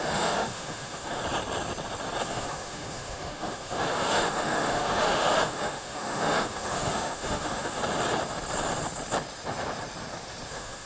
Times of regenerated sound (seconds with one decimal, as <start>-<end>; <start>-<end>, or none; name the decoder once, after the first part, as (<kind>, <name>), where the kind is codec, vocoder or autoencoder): 0.0-1.2 (autoencoder, DAC-VAE); 2.2-7.8; 10.5-10.9